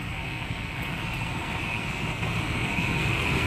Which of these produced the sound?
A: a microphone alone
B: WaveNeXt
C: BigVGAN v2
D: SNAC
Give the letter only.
D